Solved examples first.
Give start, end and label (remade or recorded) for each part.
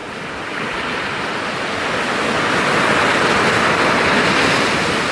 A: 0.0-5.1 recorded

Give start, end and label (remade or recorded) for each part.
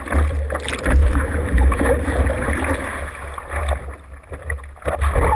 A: 0.0-1.0 recorded; 1.0-2.1 remade; 2.1-5.4 recorded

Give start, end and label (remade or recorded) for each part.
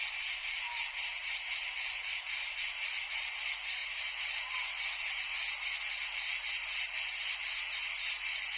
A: 0.0-8.6 recorded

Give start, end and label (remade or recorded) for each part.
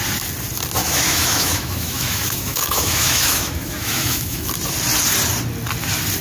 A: 0.0-0.8 recorded; 0.8-4.5 remade; 4.5-6.2 recorded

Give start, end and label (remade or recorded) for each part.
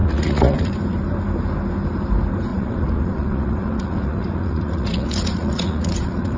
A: 0.0-0.7 remade; 0.7-2.5 recorded; 2.5-6.4 remade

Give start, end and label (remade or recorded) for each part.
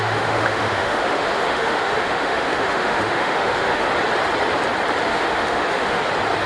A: 0.0-3.9 remade; 3.9-5.1 recorded; 5.1-6.0 remade; 6.0-6.5 recorded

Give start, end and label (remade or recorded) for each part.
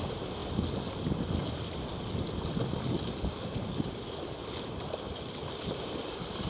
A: 0.0-6.5 recorded